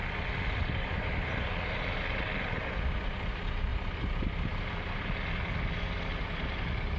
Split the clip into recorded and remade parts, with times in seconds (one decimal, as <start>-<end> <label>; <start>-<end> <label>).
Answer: 0.0-3.7 recorded; 3.7-4.2 remade; 4.2-7.0 recorded